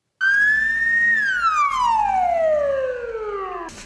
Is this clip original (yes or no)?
yes